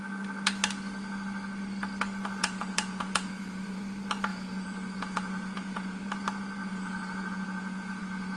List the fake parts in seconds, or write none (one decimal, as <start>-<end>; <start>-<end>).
2.4-3.8; 4.3-6.0; 6.6-8.4